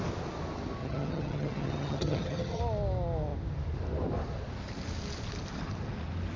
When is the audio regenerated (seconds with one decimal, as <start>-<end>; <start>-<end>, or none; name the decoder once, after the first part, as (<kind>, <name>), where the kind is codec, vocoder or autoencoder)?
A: 0.8-2.6 (vocoder, HiFi-GAN)